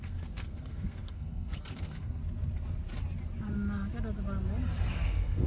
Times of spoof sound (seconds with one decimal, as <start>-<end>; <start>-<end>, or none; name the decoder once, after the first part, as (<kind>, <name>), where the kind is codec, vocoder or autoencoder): 0.0-2.2 (codec, SNAC); 4.9-5.5